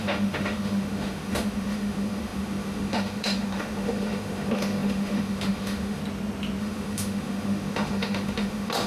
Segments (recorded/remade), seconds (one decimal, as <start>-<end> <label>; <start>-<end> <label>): 0.0-6.0 remade; 6.0-6.6 recorded; 6.6-8.9 remade